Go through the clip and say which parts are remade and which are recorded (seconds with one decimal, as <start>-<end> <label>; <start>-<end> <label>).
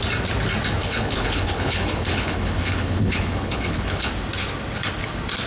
0.0-0.8 recorded; 0.8-4.1 remade; 4.1-5.5 recorded